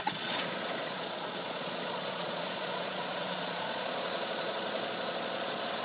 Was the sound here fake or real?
fake